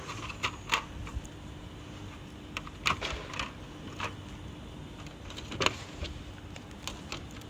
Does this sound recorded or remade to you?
recorded